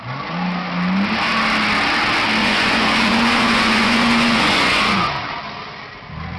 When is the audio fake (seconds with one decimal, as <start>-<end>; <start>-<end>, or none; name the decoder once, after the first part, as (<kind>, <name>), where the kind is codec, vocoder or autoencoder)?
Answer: 2.4-5.2 (vocoder, Vocos)